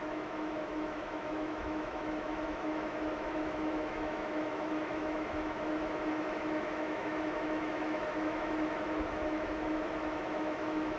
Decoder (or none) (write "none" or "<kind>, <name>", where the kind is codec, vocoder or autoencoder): autoencoder, DAC-VAE